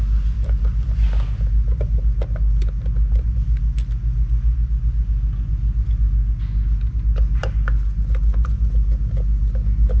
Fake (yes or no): no